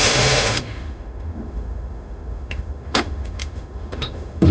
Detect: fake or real fake